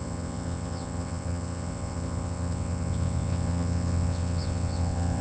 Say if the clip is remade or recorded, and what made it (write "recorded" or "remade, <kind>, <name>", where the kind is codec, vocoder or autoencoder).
remade, vocoder, WaveNeXt